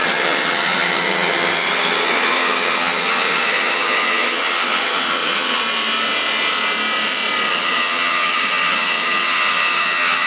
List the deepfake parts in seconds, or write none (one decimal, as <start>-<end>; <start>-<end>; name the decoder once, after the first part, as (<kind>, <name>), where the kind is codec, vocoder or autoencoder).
0.0-5.6 (vocoder, HiFi-GAN); 7.5-10.3